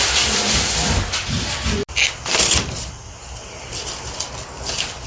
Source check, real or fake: real